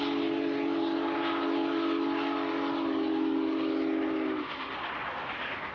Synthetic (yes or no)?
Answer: no